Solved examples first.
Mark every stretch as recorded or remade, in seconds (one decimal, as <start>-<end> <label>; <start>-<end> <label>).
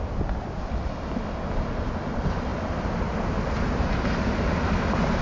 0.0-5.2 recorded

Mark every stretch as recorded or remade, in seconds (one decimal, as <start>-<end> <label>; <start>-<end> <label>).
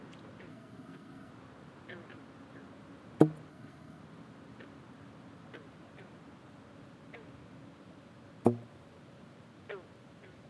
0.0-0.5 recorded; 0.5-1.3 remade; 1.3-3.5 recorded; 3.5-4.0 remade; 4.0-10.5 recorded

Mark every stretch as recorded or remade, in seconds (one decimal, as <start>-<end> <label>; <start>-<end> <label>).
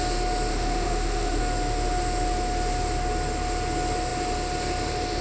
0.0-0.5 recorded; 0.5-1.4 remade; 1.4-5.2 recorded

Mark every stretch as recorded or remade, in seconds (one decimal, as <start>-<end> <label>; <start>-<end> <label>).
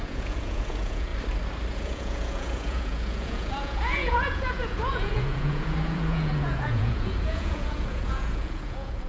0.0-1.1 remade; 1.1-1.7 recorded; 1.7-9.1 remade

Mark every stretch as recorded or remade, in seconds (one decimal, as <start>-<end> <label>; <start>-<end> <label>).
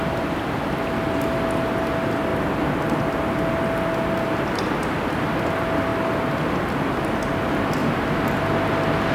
0.0-9.1 recorded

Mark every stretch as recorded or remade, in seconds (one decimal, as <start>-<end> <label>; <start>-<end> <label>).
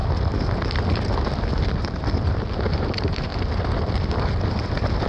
0.0-2.6 recorded; 2.6-3.3 remade; 3.3-4.2 recorded; 4.2-5.1 remade